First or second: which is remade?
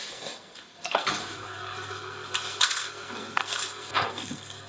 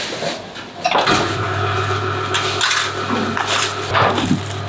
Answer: first